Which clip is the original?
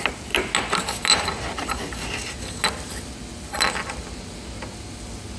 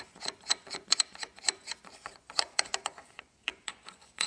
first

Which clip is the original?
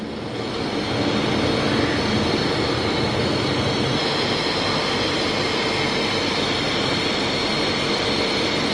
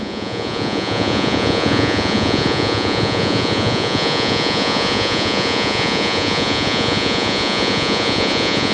first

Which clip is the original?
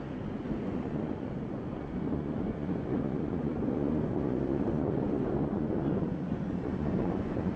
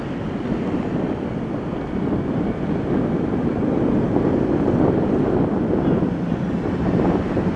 second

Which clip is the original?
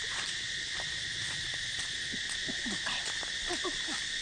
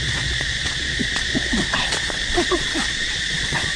first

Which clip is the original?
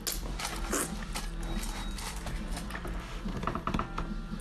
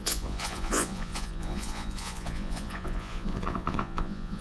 first